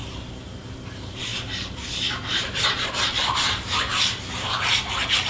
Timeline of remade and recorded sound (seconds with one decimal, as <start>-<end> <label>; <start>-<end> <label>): 0.0-3.9 remade; 3.9-4.7 recorded; 4.7-5.3 remade